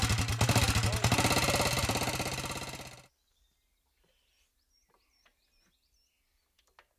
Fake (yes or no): no